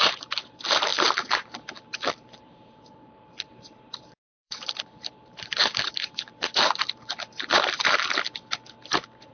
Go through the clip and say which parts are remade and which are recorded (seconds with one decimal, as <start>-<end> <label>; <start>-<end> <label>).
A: 0.0-6.8 remade; 6.8-9.3 recorded

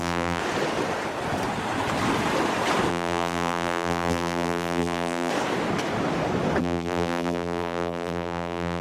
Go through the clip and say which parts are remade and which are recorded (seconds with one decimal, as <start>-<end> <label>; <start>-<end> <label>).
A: 0.0-0.4 remade; 0.4-2.9 recorded; 2.9-5.3 remade; 5.3-6.6 recorded; 6.6-8.8 remade

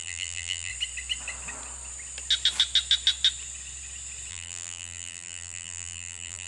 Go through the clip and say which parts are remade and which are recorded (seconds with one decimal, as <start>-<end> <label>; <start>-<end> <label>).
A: 0.0-0.7 remade; 0.7-4.3 recorded; 4.3-6.5 remade

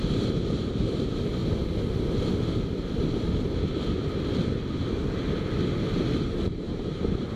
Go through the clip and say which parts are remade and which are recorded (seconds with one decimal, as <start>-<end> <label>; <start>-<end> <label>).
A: 0.0-1.4 remade; 1.4-5.8 recorded; 5.8-7.4 remade

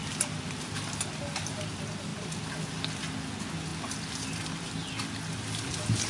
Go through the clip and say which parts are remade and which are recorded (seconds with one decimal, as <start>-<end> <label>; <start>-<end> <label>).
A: 0.0-6.1 recorded

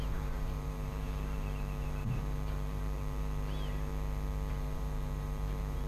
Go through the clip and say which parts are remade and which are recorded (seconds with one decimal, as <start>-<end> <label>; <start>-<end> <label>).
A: 0.0-3.9 remade; 3.9-4.5 recorded; 4.5-5.9 remade

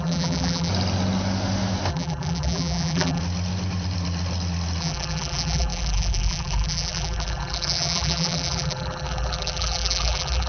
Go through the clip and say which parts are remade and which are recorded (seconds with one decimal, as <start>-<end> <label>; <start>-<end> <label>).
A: 0.0-0.7 remade; 0.7-1.9 recorded; 1.9-3.2 remade; 3.2-4.8 recorded; 4.8-10.5 remade